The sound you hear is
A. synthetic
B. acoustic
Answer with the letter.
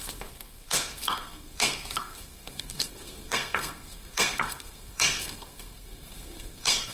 A